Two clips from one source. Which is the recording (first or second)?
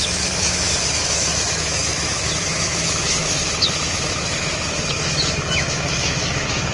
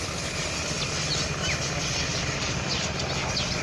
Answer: second